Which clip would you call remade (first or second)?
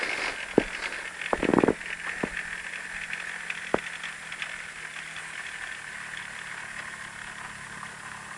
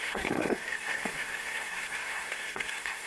second